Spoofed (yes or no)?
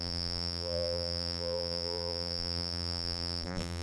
yes